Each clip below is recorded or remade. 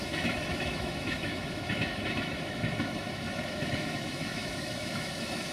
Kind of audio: remade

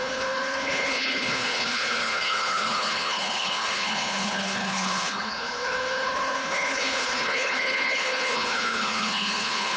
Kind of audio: remade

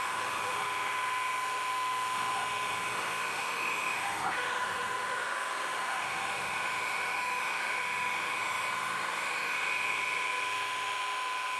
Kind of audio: remade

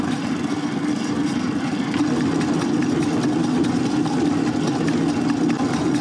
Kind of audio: recorded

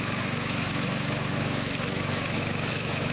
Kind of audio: remade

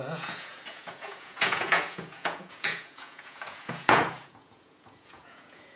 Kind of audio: remade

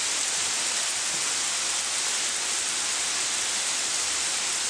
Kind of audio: recorded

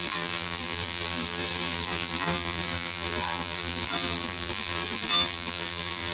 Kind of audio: remade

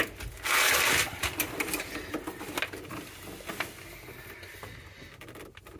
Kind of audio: recorded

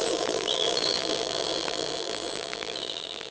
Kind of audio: remade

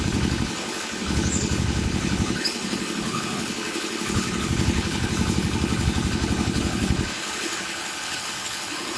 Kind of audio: remade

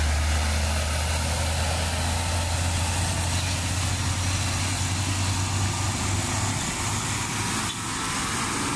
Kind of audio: recorded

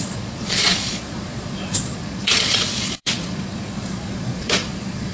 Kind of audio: remade